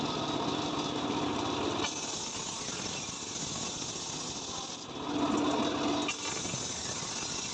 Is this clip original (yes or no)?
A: yes